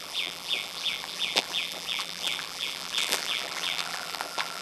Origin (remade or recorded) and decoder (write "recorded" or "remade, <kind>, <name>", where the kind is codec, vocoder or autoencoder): remade, vocoder, BigVGAN v2